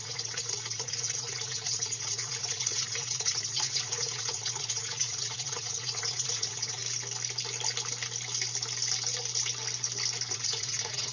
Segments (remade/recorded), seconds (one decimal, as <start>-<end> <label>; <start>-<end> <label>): 0.0-6.8 remade; 6.8-10.3 recorded; 10.3-11.1 remade